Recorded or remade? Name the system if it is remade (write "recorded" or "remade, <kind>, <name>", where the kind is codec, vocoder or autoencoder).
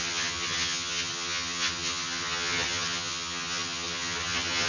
remade, vocoder, HiFi-GAN